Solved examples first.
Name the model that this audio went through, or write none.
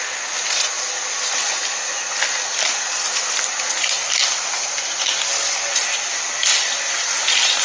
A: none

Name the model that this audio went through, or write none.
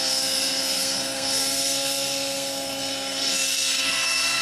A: codec, SNAC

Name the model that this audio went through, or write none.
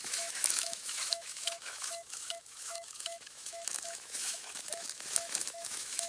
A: autoencoder, DAC-VAE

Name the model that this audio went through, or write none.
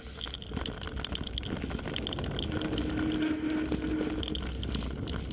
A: none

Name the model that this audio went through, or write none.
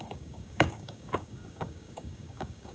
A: codec, DAC